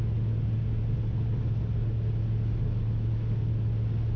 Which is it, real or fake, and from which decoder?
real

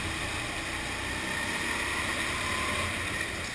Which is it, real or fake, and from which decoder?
real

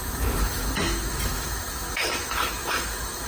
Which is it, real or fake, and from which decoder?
fake, autoencoder, DAC-VAE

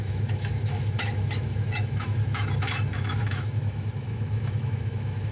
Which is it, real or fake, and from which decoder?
fake, autoencoder, DAC-VAE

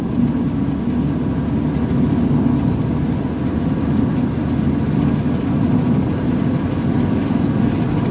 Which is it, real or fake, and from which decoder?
real